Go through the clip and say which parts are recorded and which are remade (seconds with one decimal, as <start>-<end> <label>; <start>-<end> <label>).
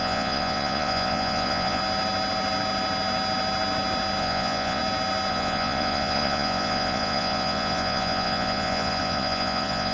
0.0-1.8 remade; 1.8-4.2 recorded; 4.2-4.8 remade; 4.8-5.3 recorded; 5.3-9.9 remade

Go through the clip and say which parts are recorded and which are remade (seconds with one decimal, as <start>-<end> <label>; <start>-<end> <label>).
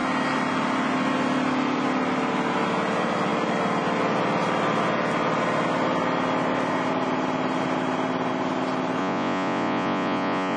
0.0-9.0 recorded; 9.0-10.6 remade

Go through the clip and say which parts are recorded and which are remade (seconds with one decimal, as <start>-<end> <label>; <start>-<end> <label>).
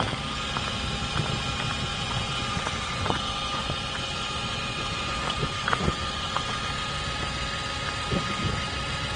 0.0-1.9 recorded; 1.9-6.7 remade; 6.7-9.2 recorded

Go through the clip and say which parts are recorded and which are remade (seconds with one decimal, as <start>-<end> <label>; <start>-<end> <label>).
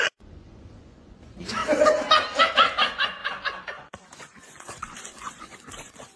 0.0-1.6 remade; 1.6-2.5 recorded; 2.5-6.2 remade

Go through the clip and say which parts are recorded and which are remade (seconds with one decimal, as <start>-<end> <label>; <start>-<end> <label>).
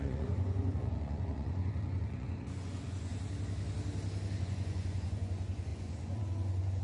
0.0-3.1 remade; 3.1-4.4 recorded; 4.4-6.8 remade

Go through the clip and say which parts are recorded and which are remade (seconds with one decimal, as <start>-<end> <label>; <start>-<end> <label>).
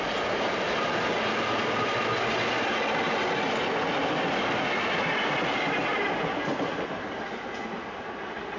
0.0-8.6 recorded